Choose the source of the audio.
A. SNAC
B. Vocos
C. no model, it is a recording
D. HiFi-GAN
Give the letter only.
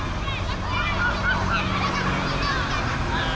C